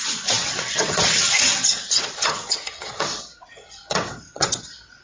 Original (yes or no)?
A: no